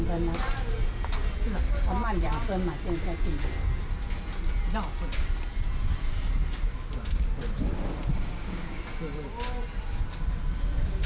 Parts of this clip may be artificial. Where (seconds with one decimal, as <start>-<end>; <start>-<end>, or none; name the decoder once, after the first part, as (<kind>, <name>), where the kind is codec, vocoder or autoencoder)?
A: 8.1-8.8 (codec, DAC)